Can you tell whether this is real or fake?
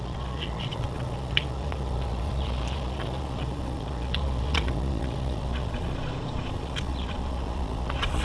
fake